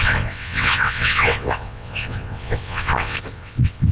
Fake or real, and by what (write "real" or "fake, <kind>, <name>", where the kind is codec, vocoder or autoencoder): fake, vocoder, WaveNeXt